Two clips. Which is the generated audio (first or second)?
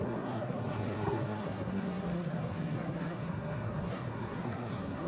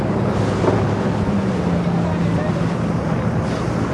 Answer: first